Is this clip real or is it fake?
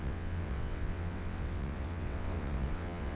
fake